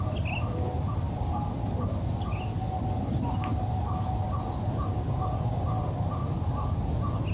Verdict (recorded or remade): recorded